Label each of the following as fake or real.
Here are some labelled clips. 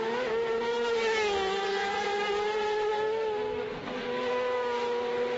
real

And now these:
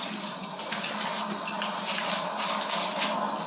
real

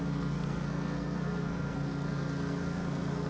fake